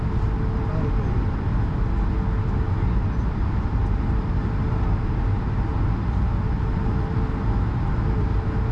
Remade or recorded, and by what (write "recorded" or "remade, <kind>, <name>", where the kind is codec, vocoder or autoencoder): recorded